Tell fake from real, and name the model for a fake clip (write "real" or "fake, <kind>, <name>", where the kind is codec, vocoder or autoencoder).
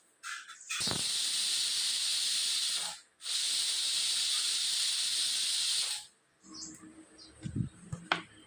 real